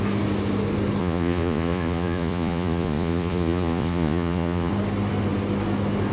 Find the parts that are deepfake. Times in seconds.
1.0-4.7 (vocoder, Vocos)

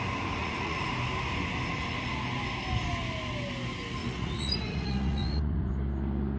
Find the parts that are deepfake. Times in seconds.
0.4-0.9 (vocoder, Vocos); 4.0-5.7